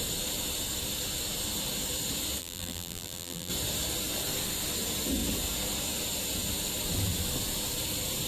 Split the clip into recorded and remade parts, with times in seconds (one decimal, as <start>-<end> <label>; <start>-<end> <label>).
0.0-2.4 recorded; 2.4-3.5 remade; 3.5-8.3 recorded